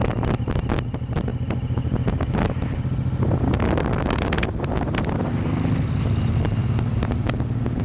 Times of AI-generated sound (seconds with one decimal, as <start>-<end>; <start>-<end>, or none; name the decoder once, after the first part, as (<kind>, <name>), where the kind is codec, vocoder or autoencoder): none